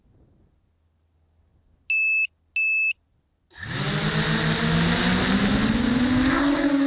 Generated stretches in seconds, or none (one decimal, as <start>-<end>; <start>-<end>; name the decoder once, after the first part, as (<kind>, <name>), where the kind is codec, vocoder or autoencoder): none